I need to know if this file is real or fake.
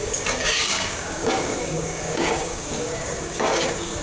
fake